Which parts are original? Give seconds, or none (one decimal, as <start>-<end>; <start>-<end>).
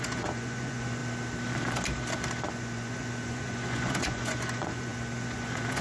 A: 1.0-2.5